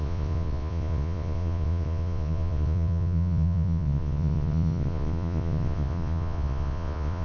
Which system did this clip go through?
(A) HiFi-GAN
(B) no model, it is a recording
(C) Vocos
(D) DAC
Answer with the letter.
C